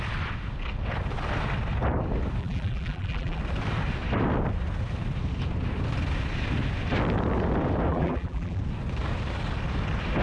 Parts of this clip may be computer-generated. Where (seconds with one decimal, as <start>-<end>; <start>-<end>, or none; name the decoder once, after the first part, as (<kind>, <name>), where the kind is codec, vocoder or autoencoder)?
2.4-3.4 (vocoder, BigVGAN v2); 7.9-8.6